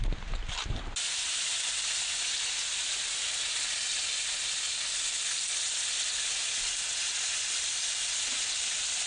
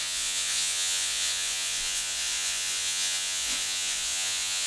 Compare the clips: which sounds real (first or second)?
first